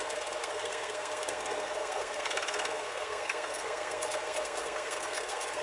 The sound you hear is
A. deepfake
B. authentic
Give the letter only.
A